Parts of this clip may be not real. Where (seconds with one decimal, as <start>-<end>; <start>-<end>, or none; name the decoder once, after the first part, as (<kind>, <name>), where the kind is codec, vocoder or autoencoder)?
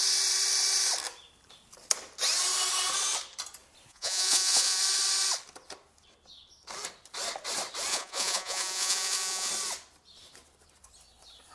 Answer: 3.9-4.8 (vocoder, Vocos); 7.9-9.5